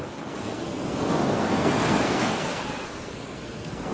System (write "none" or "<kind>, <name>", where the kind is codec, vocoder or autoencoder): codec, SNAC